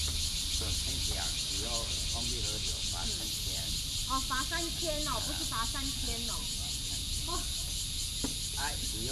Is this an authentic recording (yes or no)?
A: yes